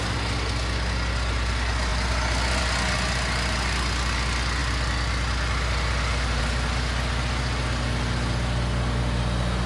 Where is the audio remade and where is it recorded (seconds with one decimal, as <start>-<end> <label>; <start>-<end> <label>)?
0.0-9.7 recorded